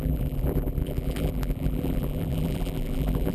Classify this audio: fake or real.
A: fake